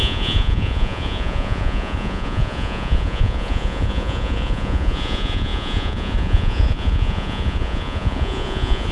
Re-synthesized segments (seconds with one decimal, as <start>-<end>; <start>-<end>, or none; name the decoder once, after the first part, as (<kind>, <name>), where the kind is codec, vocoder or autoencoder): 0.0-8.9 (vocoder, Vocos)